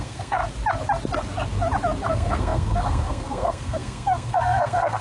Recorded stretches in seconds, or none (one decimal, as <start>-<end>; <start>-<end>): 0.4-2.1

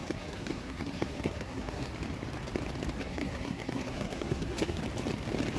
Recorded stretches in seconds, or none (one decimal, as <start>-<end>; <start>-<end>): 1.9-3.0; 4.8-5.6

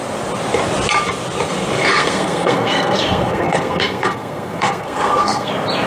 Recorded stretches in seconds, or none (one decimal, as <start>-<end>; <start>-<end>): 0.0-2.0; 5.5-5.9